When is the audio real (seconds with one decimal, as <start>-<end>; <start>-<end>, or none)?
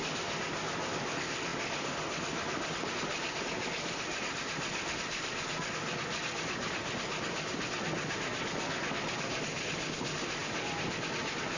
0.0-11.6